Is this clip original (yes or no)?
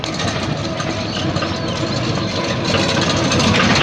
yes